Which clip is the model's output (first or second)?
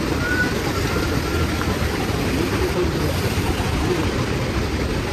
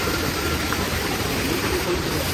second